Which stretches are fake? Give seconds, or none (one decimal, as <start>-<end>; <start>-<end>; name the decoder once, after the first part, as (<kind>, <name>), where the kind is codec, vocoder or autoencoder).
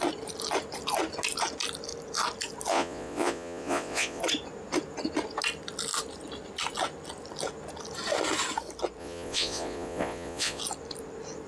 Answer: 2.7-4.2 (vocoder, Vocos); 9.0-10.6